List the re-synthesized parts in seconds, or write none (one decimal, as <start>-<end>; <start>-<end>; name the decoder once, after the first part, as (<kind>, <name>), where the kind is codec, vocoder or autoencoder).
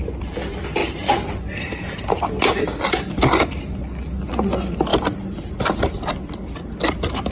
none